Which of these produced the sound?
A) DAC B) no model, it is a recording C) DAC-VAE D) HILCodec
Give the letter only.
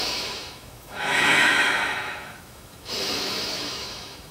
C